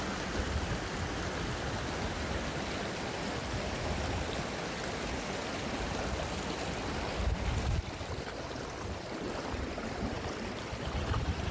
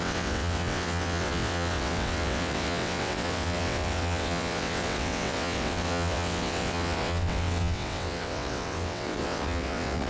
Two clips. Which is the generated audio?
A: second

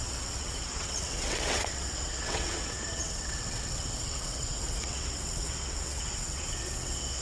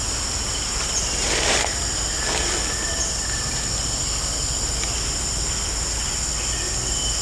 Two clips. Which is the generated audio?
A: first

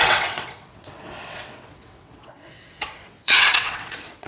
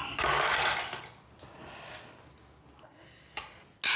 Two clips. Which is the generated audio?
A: first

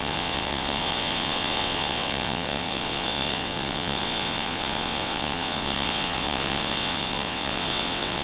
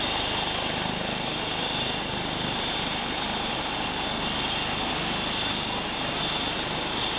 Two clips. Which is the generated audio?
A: first